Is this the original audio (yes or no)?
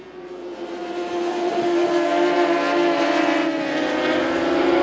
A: yes